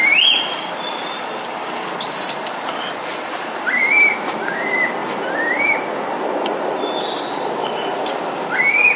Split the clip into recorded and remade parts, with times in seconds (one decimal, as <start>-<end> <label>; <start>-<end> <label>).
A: 0.0-9.0 recorded